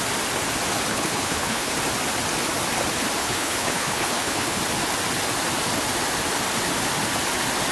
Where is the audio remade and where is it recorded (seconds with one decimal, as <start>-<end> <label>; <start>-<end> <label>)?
0.0-0.9 recorded; 0.9-1.7 remade; 1.7-3.2 recorded; 3.2-4.6 remade; 4.6-7.7 recorded